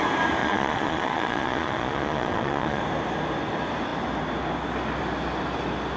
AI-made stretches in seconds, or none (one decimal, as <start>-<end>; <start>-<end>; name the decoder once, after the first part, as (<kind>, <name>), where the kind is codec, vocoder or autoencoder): 0.4-2.8 (vocoder, Vocos)